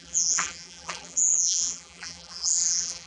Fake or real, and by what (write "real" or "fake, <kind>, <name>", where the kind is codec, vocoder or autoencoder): fake, vocoder, BigVGAN v2